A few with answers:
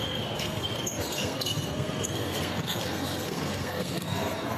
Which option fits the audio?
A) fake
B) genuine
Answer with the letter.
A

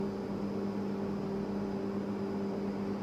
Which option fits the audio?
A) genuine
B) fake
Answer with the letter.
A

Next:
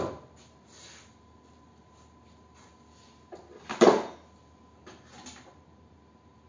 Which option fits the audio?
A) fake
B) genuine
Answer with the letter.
B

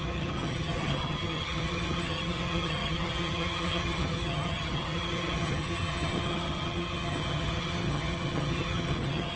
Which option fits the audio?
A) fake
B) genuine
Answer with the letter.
A